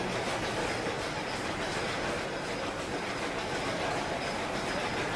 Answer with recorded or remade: recorded